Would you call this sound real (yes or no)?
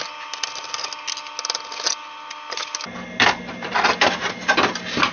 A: yes